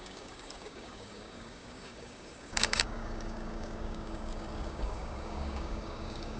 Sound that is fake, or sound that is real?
fake